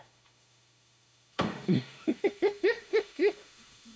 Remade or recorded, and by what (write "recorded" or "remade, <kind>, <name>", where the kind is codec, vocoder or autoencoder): remade, autoencoder, DAC-VAE